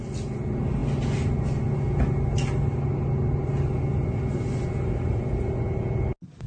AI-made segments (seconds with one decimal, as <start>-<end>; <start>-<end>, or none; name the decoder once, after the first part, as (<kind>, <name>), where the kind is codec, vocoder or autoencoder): none